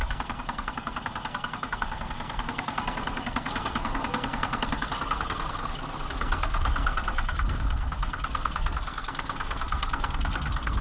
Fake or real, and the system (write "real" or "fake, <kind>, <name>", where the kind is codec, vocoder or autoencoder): fake, codec, SNAC